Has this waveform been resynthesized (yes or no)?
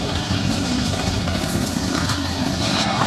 yes